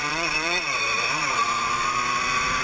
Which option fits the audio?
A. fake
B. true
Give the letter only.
A